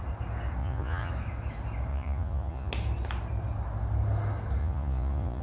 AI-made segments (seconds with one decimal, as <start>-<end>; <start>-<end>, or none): 0.6-1.1; 1.9-2.7; 4.6-5.4

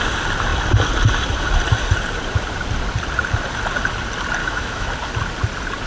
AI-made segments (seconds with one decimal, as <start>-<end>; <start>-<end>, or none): 4.4-4.9

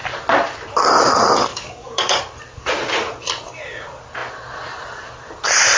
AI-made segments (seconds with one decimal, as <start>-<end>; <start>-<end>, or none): 1.5-2.2

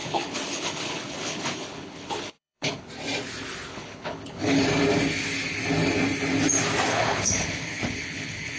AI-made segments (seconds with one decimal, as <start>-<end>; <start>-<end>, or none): 0.0-2.9; 3.7-4.6; 6.9-8.6

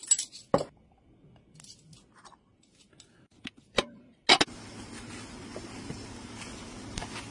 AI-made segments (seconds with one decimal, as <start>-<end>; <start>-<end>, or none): none

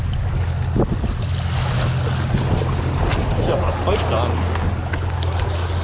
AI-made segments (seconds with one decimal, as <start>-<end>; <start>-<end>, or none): 3.1-3.7

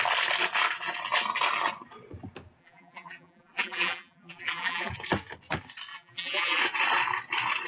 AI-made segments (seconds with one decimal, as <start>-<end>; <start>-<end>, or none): 2.6-4.9; 5.9-6.6

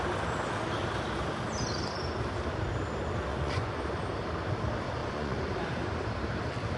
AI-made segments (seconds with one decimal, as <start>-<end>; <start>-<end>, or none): 3.3-3.8; 5.0-5.5